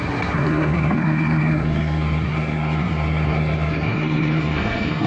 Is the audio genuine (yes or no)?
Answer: no